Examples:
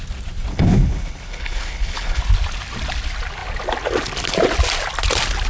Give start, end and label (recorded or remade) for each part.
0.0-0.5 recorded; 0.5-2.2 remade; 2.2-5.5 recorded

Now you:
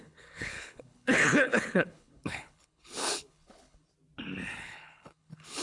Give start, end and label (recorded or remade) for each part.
0.0-3.9 remade; 3.9-4.6 recorded; 4.6-5.6 remade

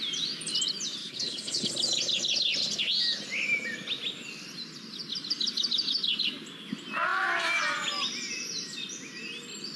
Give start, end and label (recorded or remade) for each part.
0.0-1.0 recorded; 1.0-1.7 remade; 1.7-9.8 recorded

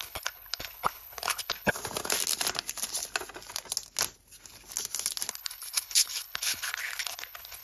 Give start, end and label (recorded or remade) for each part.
0.0-1.7 remade; 1.7-5.3 recorded; 5.3-7.6 remade

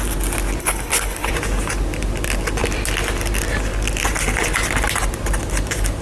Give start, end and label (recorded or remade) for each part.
0.0-0.6 recorded; 0.6-1.3 remade; 1.3-6.0 recorded